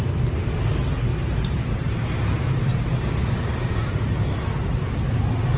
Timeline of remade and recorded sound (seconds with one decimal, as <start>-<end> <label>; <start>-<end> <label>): 0.0-1.1 recorded; 1.1-3.6 remade; 3.6-5.6 recorded